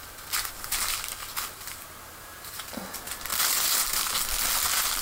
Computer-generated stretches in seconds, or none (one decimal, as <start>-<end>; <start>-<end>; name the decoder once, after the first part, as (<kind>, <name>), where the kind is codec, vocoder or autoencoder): 2.1-2.6 (vocoder, BigVGAN v2); 3.3-4.1